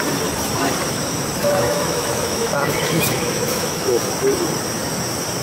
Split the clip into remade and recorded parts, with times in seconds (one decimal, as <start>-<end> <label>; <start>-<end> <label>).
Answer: 0.0-1.4 recorded; 1.4-4.0 remade; 4.0-5.4 recorded